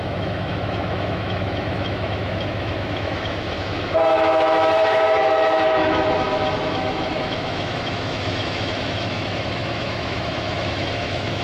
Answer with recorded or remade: remade